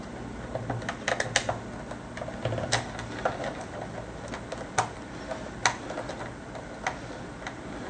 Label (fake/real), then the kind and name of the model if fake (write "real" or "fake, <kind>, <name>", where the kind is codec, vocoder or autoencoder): real